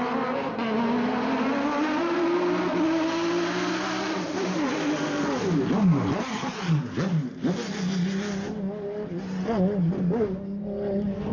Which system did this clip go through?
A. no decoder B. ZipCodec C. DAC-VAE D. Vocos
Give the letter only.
A